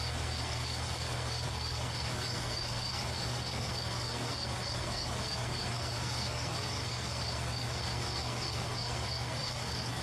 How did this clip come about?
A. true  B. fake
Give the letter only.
B